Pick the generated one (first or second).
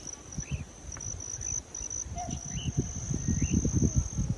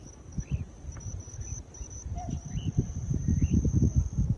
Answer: second